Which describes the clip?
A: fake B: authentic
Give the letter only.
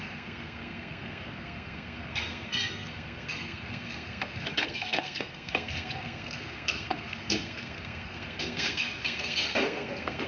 A